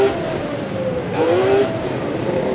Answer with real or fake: fake